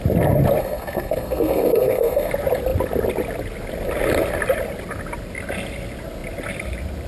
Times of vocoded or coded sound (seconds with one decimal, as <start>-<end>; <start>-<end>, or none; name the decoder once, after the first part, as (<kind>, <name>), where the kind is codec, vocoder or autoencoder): 0.6-2.3 (codec, SNAC)